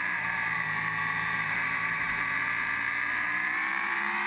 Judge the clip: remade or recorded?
remade